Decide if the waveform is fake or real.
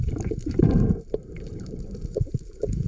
fake